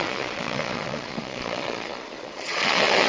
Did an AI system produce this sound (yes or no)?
yes